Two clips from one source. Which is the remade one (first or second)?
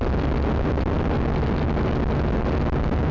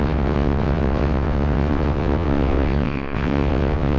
second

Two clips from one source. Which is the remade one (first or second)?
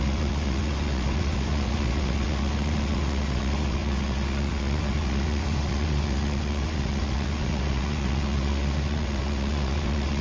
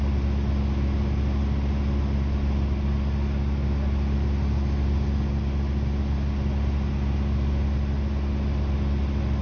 first